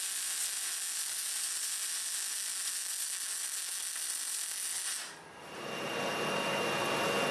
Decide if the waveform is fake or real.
real